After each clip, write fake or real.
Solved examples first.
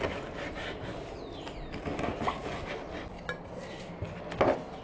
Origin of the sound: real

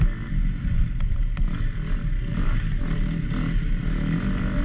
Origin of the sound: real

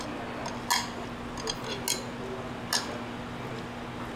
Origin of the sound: real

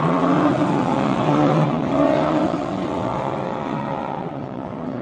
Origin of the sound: fake